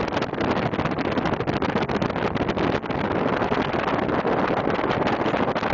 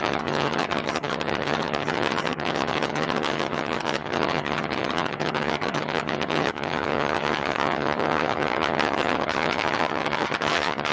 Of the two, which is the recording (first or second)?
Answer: first